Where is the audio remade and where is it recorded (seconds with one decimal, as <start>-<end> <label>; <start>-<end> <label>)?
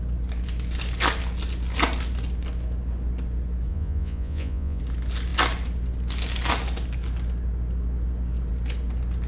0.0-3.7 recorded; 3.7-4.8 remade; 4.8-9.3 recorded